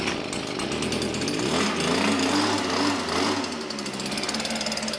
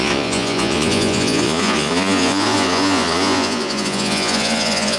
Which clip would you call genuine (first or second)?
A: first